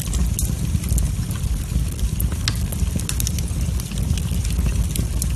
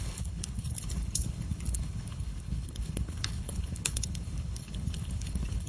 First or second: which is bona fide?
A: first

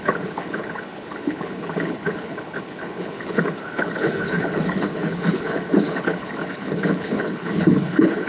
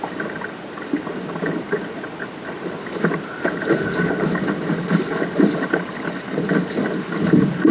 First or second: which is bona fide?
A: second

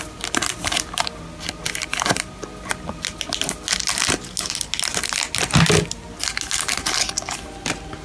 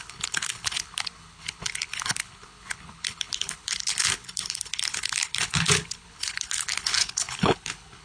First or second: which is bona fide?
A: first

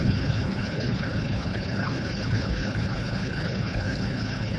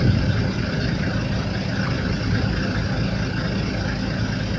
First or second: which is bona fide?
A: second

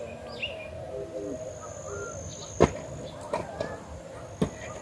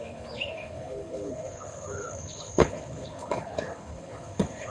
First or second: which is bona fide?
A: first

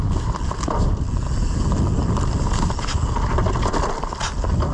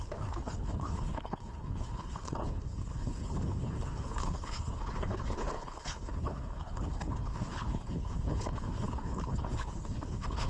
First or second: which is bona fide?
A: first